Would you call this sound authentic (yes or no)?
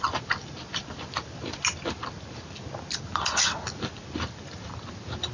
yes